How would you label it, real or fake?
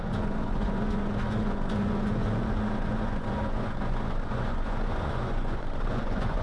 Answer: fake